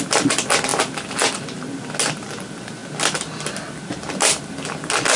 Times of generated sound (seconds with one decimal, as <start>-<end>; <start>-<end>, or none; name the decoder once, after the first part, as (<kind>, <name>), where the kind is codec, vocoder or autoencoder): none